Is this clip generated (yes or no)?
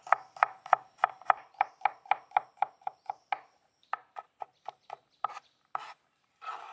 no